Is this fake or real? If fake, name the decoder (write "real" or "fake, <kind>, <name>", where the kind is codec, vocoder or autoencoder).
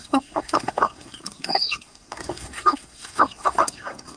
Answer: fake, codec, SNAC